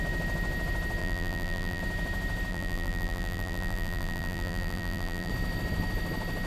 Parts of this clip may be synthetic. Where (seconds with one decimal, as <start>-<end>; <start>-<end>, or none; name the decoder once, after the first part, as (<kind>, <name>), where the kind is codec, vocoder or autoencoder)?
1.0-1.8 (vocoder, BigVGAN v2); 2.5-5.3